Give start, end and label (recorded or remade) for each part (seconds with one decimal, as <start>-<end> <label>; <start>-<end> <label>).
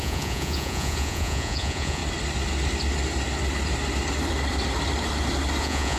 0.0-2.0 remade; 2.0-5.6 recorded; 5.6-6.0 remade